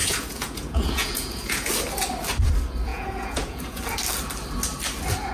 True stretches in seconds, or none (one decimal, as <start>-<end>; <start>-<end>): 1.7-2.9; 3.8-5.3